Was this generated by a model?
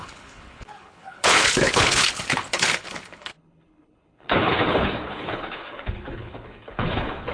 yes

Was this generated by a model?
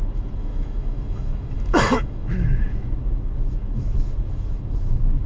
yes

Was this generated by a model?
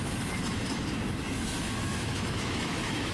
yes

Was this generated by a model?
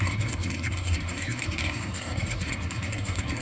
yes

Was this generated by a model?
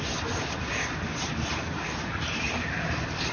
no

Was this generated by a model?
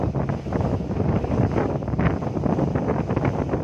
no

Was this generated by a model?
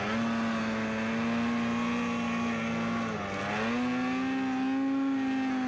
no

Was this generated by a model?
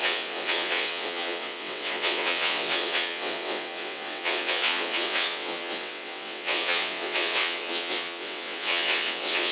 yes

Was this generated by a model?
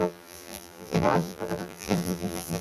yes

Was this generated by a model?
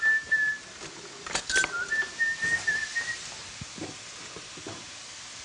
no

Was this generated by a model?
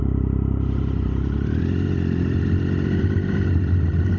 no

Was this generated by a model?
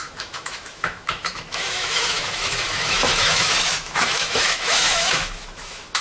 yes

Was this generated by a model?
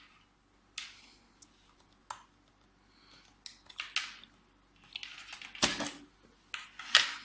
no